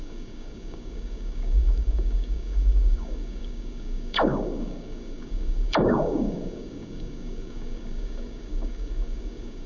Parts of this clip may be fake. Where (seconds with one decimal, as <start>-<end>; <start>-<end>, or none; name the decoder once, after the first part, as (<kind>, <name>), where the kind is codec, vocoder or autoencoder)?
0.0-9.7 (codec, DAC)

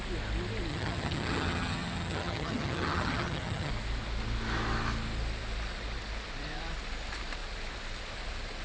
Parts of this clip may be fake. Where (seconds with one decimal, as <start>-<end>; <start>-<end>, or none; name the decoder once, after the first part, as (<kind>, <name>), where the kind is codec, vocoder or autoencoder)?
0.7-3.7 (vocoder, HiFi-GAN)

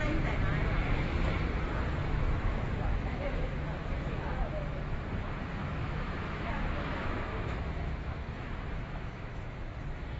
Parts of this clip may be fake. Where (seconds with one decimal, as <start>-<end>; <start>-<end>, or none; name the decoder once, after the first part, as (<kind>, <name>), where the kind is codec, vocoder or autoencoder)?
2.0-4.4 (autoencoder, DAC-VAE); 5.5-10.2

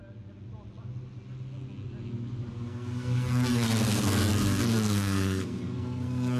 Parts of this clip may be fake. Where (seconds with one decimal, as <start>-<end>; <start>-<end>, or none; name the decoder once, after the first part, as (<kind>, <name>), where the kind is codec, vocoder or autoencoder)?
2.5-6.4 (codec, SNAC)

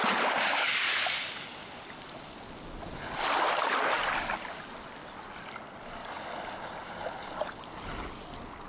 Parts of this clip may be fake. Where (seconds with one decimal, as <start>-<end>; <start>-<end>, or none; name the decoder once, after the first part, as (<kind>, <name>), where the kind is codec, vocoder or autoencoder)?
none

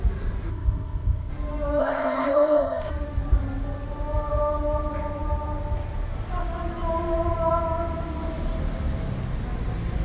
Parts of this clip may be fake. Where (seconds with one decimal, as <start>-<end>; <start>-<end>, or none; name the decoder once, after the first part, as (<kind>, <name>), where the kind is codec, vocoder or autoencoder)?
0.5-1.3 (codec, ZipCodec); 1.8-2.9